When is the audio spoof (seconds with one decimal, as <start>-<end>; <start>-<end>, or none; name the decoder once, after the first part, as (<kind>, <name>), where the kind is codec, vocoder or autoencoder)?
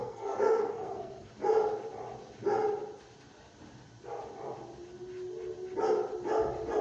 0.0-1.3 (codec, SNAC)